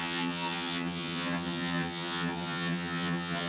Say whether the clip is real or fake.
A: fake